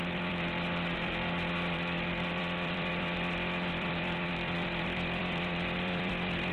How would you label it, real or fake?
fake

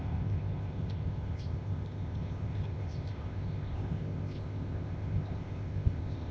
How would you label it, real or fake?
fake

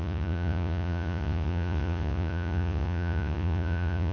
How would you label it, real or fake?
fake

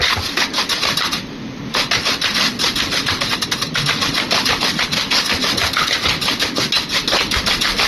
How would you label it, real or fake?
real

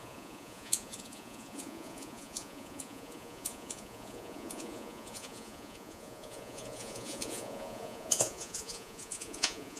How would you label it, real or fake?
fake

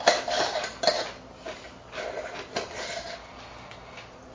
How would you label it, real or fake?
real